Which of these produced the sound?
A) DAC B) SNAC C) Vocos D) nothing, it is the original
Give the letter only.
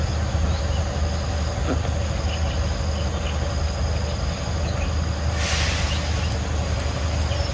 D